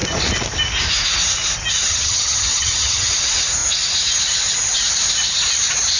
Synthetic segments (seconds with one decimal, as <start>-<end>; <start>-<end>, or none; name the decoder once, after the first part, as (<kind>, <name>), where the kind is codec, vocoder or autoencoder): 1.9-3.1 (vocoder, HiFi-GAN)